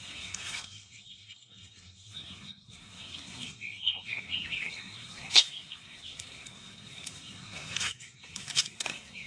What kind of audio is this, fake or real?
fake